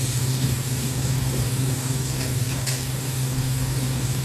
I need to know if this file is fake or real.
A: fake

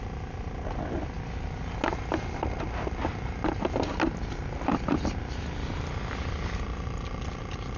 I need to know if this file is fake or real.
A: real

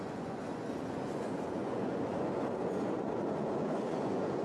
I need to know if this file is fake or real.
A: fake